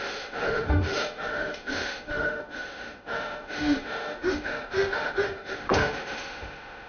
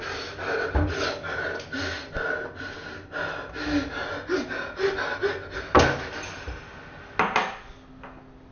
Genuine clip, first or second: second